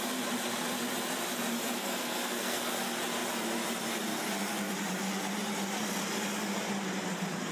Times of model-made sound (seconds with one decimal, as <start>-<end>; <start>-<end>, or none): 1.8-2.7